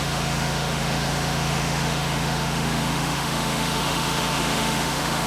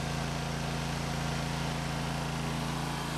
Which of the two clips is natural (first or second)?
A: second